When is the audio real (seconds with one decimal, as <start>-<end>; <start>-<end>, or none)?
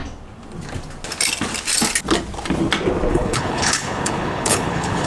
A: 0.0-3.1